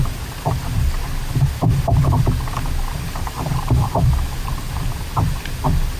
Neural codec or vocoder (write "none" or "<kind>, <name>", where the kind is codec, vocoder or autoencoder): none